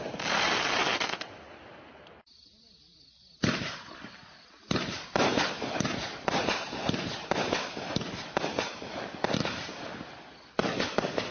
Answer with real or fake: real